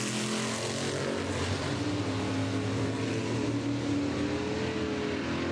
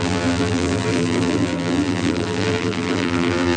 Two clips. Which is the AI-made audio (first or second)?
second